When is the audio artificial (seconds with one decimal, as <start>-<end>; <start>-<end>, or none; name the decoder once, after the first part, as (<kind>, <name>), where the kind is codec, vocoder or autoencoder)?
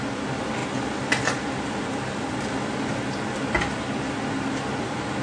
none